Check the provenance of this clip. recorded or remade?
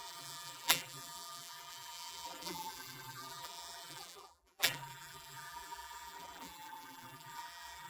remade